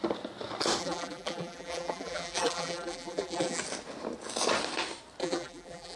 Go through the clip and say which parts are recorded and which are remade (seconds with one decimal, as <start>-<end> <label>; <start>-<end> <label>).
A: 0.0-0.8 recorded; 0.8-3.6 remade; 3.6-5.2 recorded; 5.2-6.0 remade